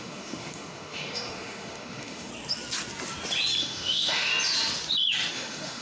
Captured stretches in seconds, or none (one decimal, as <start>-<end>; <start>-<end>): 2.3-3.6; 4.3-5.3